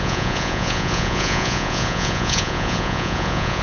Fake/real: fake